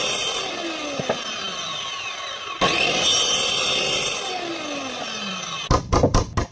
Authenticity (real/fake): real